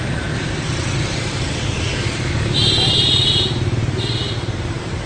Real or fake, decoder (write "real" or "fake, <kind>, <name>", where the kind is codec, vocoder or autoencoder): fake, vocoder, BigVGAN v2